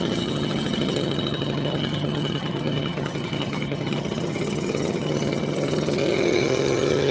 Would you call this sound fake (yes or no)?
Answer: yes